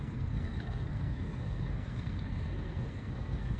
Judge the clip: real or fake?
fake